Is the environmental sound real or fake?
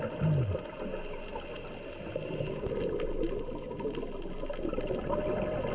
real